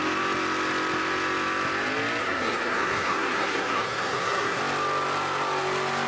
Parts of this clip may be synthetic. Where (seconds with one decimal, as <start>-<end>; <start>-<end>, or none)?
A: 2.2-4.6